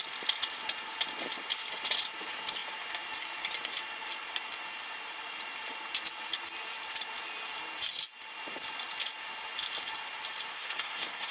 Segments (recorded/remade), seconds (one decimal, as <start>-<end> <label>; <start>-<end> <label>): 0.0-10.5 recorded; 10.5-11.3 remade